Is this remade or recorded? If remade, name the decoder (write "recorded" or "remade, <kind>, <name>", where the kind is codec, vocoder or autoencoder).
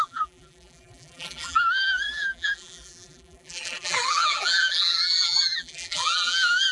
remade, vocoder, BigVGAN v2